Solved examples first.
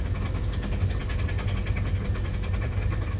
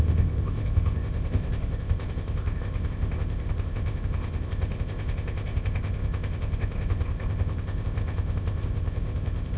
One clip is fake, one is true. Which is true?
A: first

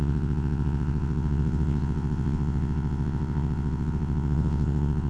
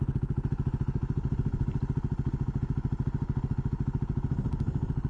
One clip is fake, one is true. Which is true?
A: second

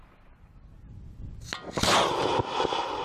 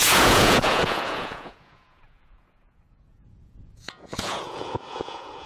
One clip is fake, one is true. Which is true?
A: first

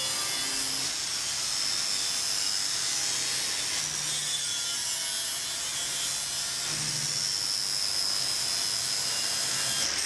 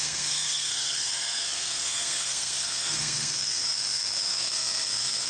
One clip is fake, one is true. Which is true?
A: first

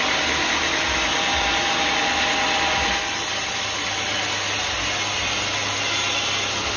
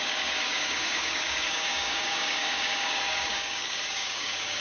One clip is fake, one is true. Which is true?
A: first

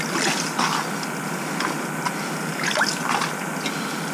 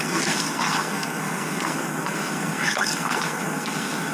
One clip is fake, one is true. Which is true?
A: first